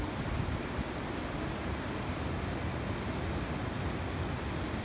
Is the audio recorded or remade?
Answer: recorded